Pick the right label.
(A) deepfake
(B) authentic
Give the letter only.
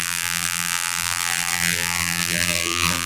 A